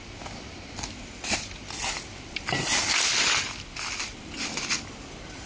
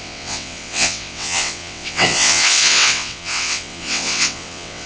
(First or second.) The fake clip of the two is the second